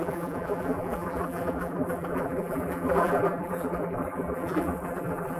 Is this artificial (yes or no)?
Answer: yes